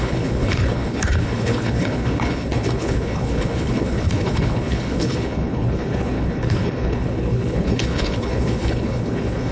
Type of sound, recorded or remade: remade